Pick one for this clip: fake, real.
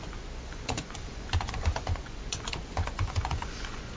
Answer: fake